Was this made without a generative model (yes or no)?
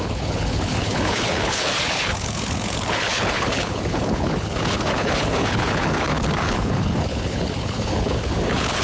no